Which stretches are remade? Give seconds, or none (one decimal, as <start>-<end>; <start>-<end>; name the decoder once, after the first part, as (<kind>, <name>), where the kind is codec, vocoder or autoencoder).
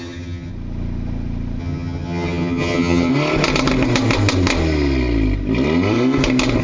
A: 0.0-0.5 (vocoder, HiFi-GAN); 1.6-3.1